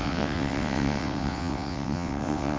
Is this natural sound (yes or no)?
no